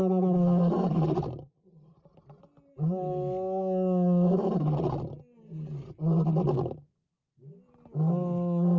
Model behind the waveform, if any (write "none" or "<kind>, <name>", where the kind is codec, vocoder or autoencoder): none